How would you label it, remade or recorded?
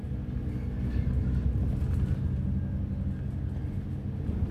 recorded